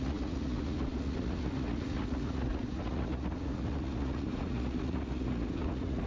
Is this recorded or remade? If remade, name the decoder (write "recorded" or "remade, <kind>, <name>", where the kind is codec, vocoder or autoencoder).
remade, vocoder, Vocos